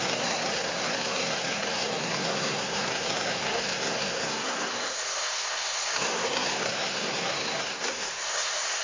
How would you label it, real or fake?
fake